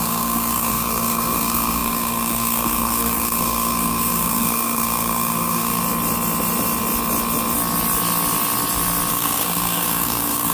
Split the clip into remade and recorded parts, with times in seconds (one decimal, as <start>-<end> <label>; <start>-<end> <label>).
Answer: 0.0-5.8 remade; 5.8-9.1 recorded; 9.1-10.5 remade